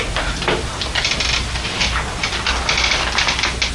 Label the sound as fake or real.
real